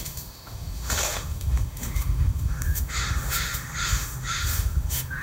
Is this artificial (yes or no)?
yes